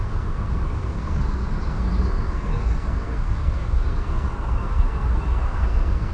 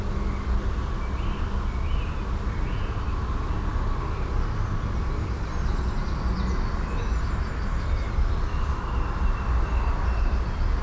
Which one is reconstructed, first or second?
first